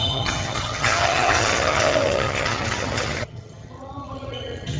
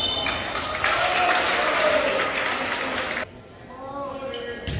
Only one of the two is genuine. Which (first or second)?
second